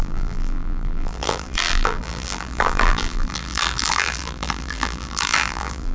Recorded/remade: remade